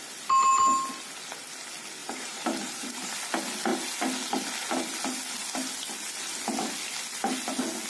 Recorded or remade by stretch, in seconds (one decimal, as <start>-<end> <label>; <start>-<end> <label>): 0.0-2.0 recorded; 2.0-3.1 remade; 3.1-7.9 recorded